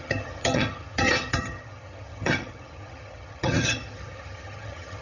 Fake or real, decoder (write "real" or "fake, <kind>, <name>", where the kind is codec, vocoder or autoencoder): fake, vocoder, HiFi-GAN